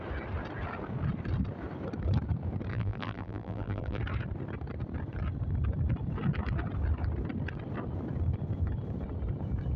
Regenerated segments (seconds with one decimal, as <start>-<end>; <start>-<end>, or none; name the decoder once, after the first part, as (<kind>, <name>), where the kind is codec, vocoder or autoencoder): 2.7-4.0 (vocoder, BigVGAN v2)